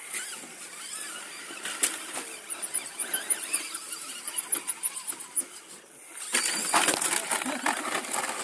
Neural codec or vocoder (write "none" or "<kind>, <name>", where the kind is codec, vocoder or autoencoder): none